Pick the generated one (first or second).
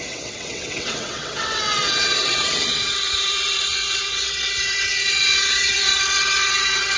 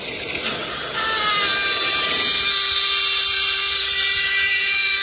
first